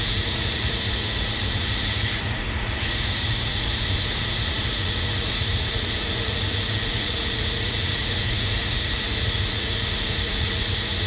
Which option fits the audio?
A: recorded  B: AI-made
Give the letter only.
B